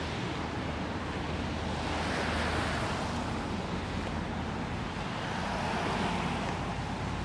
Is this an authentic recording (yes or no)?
yes